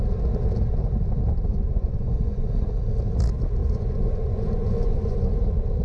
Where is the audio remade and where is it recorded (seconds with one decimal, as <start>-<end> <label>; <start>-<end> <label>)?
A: 0.0-1.5 recorded; 1.5-2.5 remade; 2.5-3.6 recorded; 3.6-5.3 remade; 5.3-5.8 recorded